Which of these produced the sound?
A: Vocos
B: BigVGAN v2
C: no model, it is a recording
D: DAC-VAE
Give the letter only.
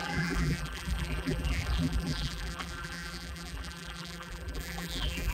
B